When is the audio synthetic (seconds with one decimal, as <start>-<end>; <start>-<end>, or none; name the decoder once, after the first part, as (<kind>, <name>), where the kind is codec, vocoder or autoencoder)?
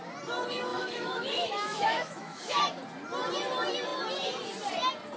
0.7-2.6 (autoencoder, DAC-VAE)